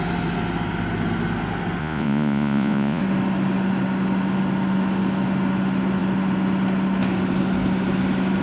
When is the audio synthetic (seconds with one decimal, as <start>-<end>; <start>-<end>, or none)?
1.8-3.0